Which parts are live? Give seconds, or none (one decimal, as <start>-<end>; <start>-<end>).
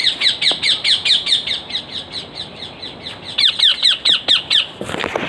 1.8-5.3